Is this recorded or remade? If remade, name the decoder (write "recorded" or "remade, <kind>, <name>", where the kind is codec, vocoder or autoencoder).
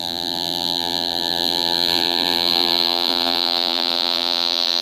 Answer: remade, vocoder, BigVGAN v2